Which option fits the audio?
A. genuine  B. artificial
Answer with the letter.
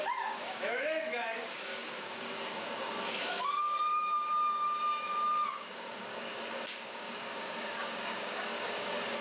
B